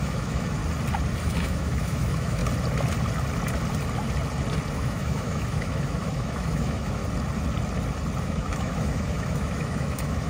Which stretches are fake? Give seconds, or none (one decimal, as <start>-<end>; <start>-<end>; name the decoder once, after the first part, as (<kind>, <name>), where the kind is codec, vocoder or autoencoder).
0.0-0.6 (autoencoder, DAC-VAE); 1.2-2.4; 4.7-7.0; 8.2-10.3